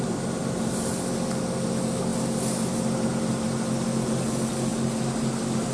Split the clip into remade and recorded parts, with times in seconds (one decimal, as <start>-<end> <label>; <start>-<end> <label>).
0.0-5.7 recorded